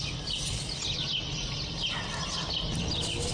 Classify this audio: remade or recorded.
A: recorded